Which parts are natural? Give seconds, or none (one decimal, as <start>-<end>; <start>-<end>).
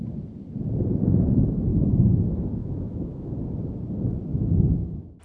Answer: 0.0-2.6; 3.4-4.3